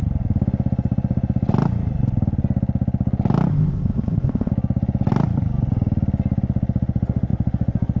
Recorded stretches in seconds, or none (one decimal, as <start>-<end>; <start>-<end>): 0.0-3.5; 4.5-8.0